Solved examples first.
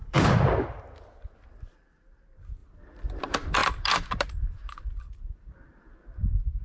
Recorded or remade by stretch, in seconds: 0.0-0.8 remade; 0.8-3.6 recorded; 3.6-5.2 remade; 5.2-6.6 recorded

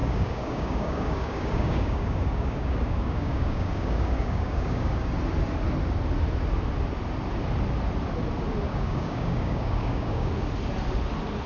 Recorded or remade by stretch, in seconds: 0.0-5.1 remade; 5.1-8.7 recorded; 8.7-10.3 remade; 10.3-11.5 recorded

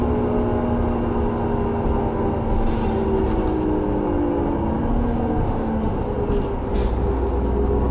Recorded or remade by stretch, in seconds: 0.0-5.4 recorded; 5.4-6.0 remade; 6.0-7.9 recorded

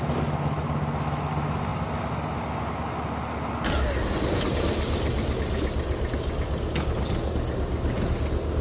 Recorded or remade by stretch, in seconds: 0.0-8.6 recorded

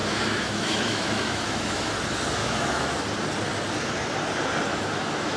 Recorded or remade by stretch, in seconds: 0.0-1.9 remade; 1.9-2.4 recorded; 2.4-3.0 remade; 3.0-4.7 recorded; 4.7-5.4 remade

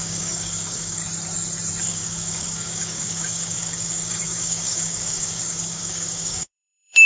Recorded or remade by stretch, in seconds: 0.0-1.0 remade; 1.0-1.8 recorded; 1.8-7.1 remade

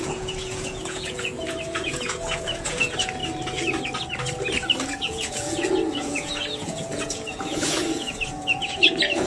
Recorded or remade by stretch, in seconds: 0.0-3.2 remade; 3.2-5.0 recorded; 5.0-9.3 remade

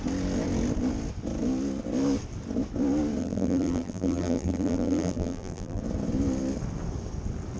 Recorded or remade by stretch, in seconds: 0.0-3.2 recorded; 3.2-5.8 remade; 5.8-7.6 recorded